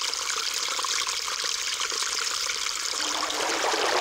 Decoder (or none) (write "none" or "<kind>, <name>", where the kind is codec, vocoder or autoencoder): vocoder, BigVGAN v2